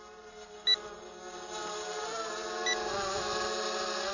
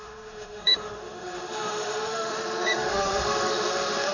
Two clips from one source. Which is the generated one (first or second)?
second